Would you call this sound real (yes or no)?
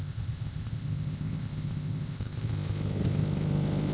no